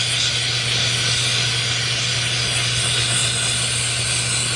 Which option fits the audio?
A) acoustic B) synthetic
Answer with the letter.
A